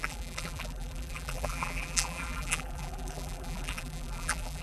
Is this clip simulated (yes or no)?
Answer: yes